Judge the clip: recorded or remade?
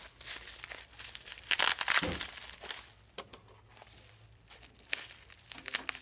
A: recorded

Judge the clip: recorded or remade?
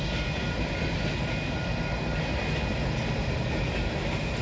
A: recorded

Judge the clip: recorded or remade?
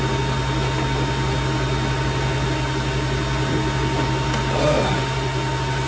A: recorded